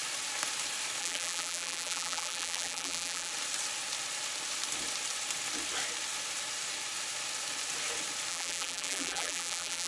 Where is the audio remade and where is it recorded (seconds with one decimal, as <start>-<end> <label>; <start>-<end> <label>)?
0.0-1.0 recorded; 1.0-3.3 remade; 3.3-8.3 recorded; 8.3-9.9 remade